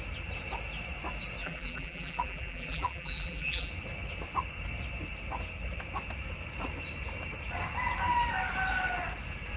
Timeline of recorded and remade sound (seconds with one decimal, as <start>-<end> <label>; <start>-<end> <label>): 0.0-1.4 recorded; 1.4-3.7 remade; 3.7-9.6 recorded